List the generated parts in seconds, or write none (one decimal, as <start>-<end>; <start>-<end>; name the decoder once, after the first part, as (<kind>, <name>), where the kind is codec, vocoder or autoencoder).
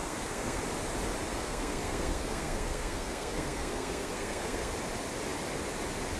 0.0-0.6 (codec, SNAC); 1.3-4.7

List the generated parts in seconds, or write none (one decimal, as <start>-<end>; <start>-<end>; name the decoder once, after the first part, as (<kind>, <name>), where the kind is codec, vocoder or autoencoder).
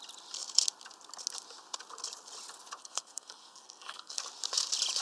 2.8-4.2 (codec, SNAC)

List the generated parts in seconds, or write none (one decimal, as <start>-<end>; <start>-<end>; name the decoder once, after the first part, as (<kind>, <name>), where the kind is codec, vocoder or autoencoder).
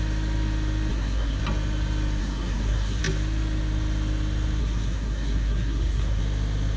0.9-1.4 (codec, SNAC); 2.2-3.0; 4.6-6.2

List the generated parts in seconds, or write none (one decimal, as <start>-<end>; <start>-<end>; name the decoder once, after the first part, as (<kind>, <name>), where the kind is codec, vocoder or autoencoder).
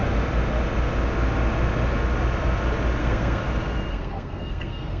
3.0-3.4 (codec, SNAC); 3.9-5.0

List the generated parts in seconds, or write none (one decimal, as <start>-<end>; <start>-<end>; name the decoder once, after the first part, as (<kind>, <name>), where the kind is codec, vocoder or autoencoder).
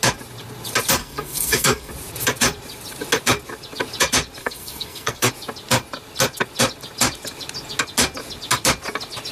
1.0-1.9 (codec, SNAC); 4.4-5.3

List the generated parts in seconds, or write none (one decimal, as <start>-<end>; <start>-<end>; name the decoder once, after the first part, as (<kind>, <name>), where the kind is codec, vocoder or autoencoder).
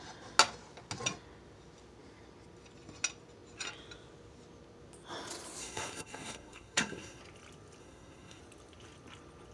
5.6-7.2 (codec, SNAC); 7.8-8.4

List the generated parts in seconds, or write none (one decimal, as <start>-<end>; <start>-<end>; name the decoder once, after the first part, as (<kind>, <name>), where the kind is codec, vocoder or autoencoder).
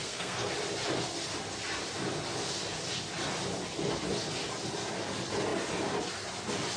0.0-0.5 (codec, SNAC)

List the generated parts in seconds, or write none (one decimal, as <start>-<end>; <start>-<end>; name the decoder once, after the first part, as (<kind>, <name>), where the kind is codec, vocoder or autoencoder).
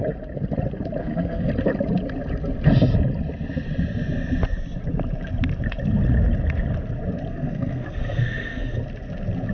1.0-1.5 (codec, SNAC); 7.3-8.7